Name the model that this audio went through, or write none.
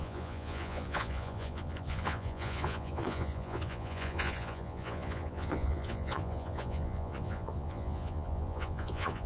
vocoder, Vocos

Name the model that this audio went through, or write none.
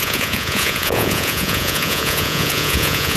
vocoder, Vocos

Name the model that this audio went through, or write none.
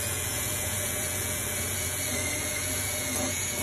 vocoder, Vocos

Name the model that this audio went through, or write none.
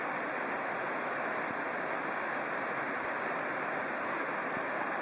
none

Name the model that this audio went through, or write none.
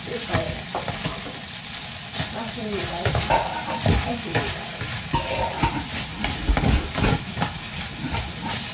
none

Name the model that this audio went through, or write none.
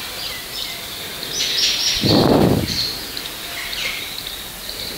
none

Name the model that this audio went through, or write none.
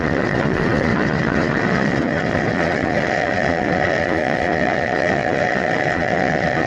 vocoder, Vocos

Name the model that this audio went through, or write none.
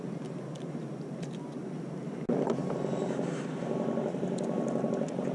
none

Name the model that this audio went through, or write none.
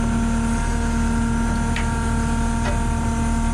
none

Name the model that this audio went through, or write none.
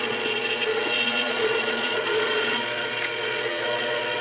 vocoder, Vocos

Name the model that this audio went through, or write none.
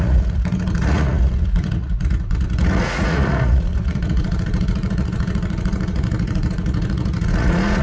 vocoder, Vocos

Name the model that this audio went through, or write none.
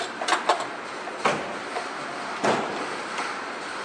none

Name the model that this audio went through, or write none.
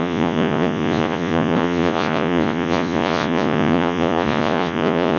vocoder, Vocos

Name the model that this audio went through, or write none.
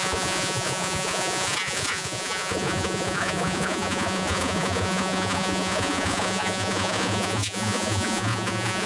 vocoder, Vocos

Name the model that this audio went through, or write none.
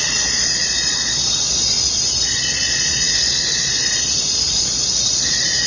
vocoder, Vocos